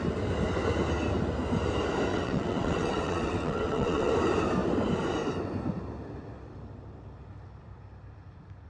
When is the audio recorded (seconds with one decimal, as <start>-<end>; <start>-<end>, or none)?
0.0-2.1; 4.1-8.7